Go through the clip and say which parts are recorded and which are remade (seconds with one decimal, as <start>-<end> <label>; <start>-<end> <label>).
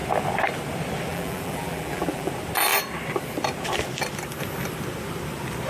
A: 0.0-1.1 recorded; 1.1-2.3 remade; 2.3-5.7 recorded